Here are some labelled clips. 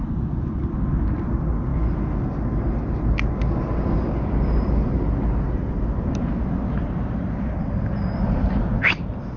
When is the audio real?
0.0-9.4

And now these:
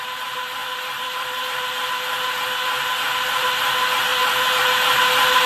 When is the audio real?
0.0-0.6; 1.9-4.1; 4.6-5.5

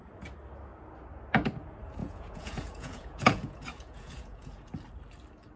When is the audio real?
0.0-2.0; 4.7-5.6